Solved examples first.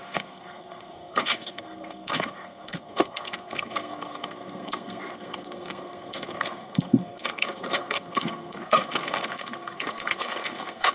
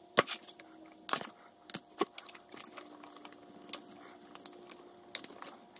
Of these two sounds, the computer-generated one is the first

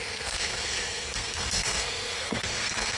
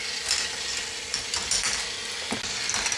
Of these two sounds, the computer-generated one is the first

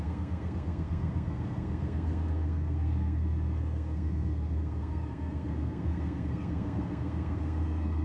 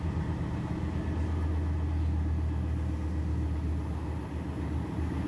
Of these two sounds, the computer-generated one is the first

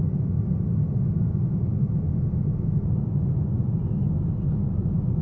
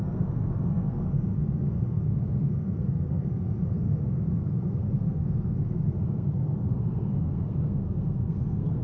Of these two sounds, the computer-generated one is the second